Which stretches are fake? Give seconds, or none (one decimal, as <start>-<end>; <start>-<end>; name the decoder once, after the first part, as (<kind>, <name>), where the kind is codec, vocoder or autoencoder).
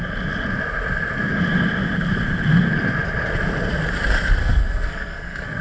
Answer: 4.4-5.6 (codec, SNAC)